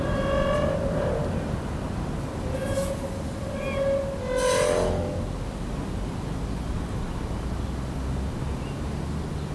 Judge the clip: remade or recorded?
recorded